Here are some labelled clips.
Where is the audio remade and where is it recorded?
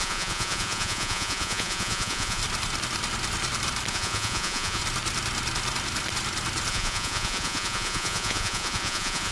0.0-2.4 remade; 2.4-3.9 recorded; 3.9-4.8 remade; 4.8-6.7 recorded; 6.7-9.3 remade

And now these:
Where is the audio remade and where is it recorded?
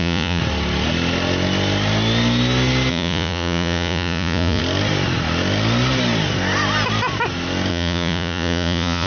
0.0-0.4 remade; 0.4-2.9 recorded; 2.9-4.6 remade; 4.6-7.7 recorded; 7.7-9.1 remade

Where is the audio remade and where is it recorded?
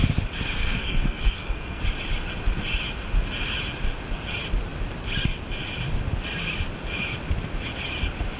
0.0-0.6 recorded; 0.6-1.8 remade; 1.8-8.4 recorded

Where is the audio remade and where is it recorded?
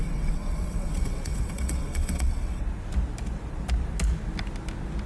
0.0-2.6 remade; 2.6-5.1 recorded